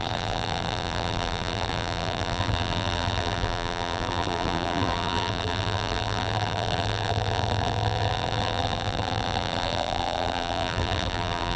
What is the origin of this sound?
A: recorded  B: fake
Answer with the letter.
B